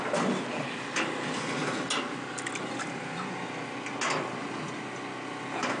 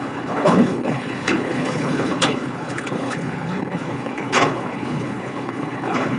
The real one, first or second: first